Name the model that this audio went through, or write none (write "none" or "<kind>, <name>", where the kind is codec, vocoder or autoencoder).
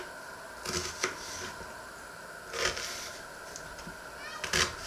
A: none